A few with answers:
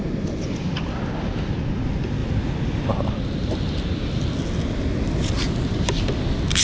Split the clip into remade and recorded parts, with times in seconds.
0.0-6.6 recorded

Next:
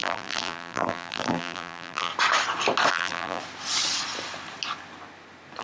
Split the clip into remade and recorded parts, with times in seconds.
0.0-2.1 remade; 2.1-2.9 recorded; 2.9-3.4 remade; 3.4-5.6 recorded

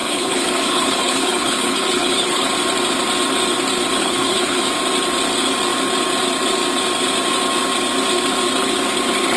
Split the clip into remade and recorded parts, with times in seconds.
0.0-2.5 remade; 2.5-4.0 recorded; 4.0-4.6 remade; 4.6-9.4 recorded

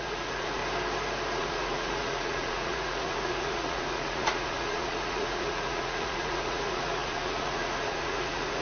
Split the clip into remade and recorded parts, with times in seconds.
0.0-0.6 remade; 0.6-1.3 recorded; 1.3-8.6 remade

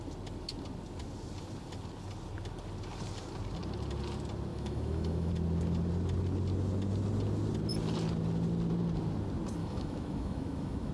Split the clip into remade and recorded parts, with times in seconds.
0.0-4.5 recorded; 4.5-5.3 remade; 5.3-9.6 recorded; 9.6-10.9 remade